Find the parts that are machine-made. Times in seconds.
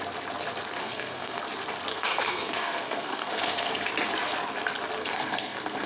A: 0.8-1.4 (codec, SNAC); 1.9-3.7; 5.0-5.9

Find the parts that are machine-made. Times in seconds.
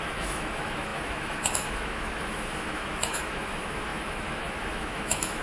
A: 0.0-5.4 (autoencoder, DAC-VAE)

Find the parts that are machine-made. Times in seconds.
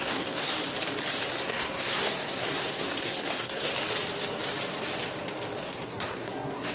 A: 0.0-0.5 (codec, SNAC); 1.3-3.7; 5.6-6.7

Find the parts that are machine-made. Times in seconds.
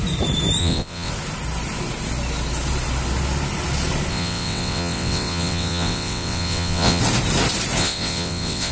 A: 0.6-1.1 (vocoder, WaveNeXt); 4.1-7.0; 7.8-8.7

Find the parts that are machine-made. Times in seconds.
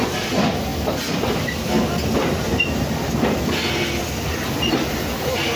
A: none